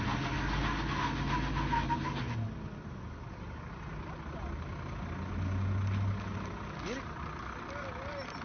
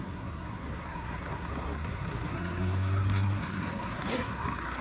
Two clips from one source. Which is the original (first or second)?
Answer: first